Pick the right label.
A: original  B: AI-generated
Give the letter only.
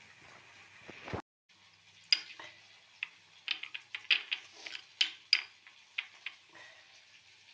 A